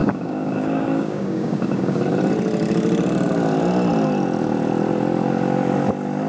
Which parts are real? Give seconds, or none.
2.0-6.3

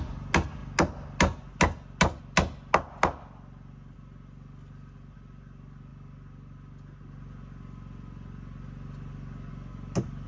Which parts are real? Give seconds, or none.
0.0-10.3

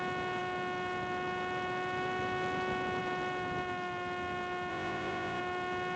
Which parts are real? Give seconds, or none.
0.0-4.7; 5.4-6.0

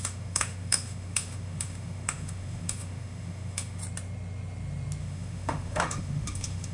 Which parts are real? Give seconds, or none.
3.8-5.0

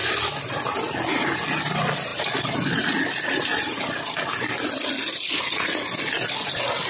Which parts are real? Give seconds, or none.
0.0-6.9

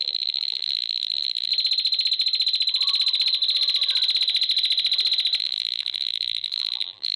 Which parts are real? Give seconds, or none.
1.5-5.4

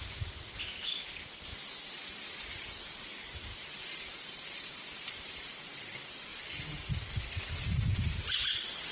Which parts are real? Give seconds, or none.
0.0-3.5; 5.8-6.3; 7.0-8.9

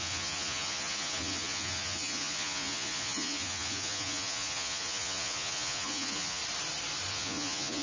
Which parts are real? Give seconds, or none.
6.4-7.1